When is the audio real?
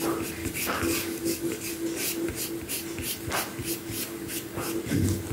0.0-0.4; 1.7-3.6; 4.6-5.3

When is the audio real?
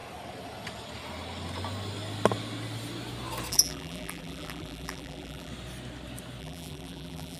0.0-3.5; 5.5-6.4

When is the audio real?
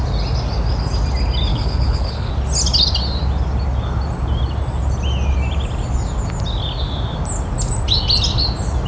0.0-1.5; 2.3-8.9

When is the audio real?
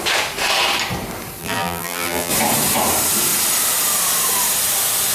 0.0-1.4; 2.3-5.1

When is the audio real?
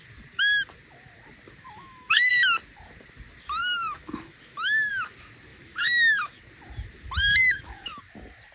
0.0-1.8; 2.3-3.6; 4.9-5.5; 6.4-7.4; 8.0-8.5